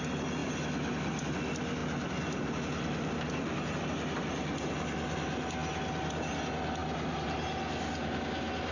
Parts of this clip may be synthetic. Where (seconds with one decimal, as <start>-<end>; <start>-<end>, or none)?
0.4-1.3; 1.8-4.2